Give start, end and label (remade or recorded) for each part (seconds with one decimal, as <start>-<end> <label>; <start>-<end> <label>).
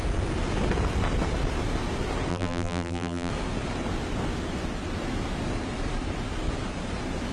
0.0-2.3 recorded; 2.3-3.3 remade; 3.3-7.3 recorded